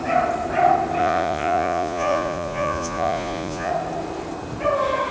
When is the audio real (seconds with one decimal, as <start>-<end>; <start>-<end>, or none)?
0.0-1.0; 3.7-5.1